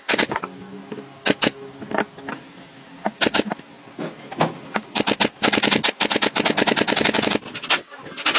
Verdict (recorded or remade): recorded